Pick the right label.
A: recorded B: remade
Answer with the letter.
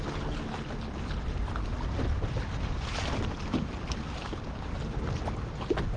A